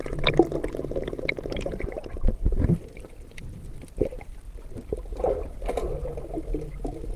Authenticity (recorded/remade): recorded